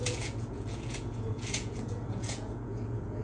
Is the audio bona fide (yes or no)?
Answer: no